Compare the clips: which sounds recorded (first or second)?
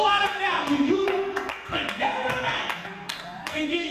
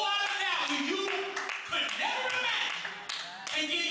second